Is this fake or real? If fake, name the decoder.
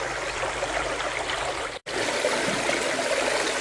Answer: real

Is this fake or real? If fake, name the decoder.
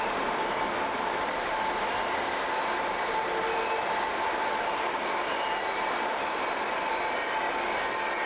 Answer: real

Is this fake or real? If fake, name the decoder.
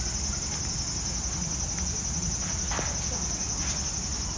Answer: real